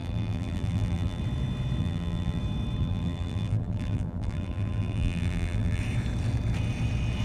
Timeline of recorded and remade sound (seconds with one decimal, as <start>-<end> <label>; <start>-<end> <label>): 0.0-1.2 remade; 1.2-1.8 recorded; 1.8-2.4 remade; 2.4-2.8 recorded; 2.8-5.8 remade; 5.8-7.2 recorded